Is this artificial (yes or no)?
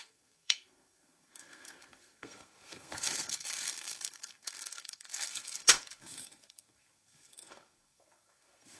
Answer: yes